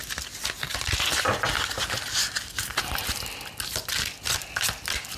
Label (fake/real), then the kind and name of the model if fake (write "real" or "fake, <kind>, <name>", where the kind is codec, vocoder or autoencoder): real